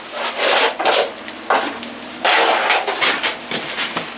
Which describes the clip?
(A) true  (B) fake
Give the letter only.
A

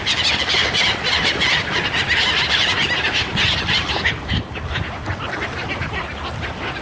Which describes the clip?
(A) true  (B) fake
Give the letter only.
A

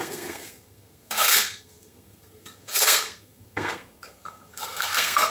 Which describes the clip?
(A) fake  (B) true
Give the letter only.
A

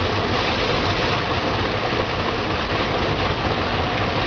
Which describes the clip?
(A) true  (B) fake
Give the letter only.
A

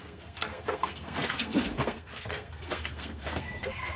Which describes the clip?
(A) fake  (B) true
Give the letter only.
A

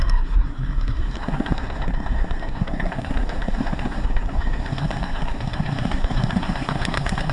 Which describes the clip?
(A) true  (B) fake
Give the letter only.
B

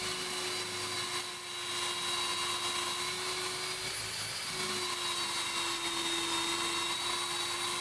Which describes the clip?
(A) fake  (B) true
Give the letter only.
B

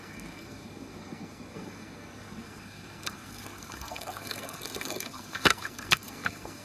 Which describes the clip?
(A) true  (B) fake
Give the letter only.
B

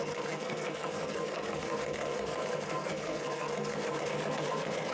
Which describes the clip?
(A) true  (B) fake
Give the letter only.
B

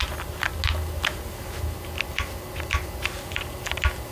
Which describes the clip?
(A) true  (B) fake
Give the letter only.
A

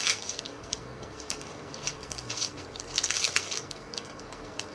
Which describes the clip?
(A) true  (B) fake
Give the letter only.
B